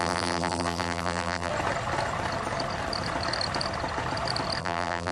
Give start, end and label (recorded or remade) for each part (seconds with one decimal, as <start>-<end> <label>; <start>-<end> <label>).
0.0-1.5 remade; 1.5-4.6 recorded; 4.6-5.1 remade